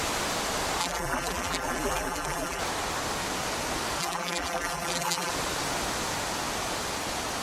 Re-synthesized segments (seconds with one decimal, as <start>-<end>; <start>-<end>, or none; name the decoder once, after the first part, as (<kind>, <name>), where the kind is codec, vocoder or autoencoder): 0.8-2.6 (vocoder, BigVGAN v2); 4.0-5.3